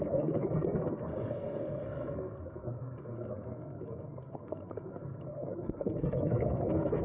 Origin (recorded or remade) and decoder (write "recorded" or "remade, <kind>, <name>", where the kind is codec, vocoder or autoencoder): remade, codec, SNAC